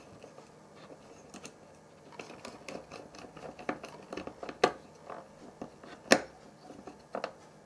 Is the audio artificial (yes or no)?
no